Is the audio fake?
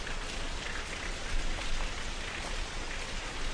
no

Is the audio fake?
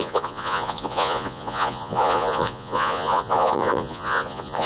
yes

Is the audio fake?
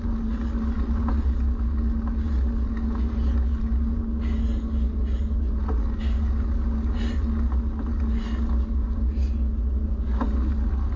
no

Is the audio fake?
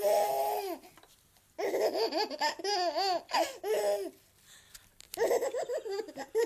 no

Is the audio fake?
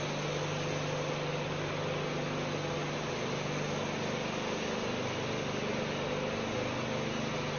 no